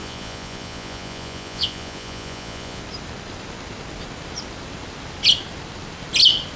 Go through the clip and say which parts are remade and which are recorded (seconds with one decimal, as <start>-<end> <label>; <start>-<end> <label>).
0.0-2.8 remade; 2.8-6.6 recorded